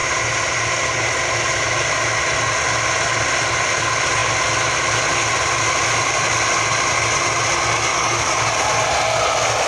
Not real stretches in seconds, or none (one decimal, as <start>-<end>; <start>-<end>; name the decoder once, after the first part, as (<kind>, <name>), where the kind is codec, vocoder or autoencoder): 7.9-8.5 (codec, DAC)